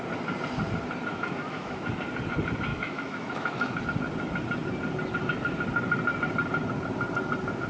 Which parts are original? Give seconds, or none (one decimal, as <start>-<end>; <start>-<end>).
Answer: 0.0-1.1; 1.9-2.7; 3.8-7.7